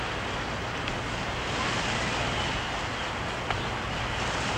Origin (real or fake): real